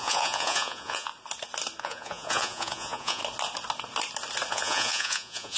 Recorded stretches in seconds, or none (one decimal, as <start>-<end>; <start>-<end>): 1.1-1.8; 3.2-4.5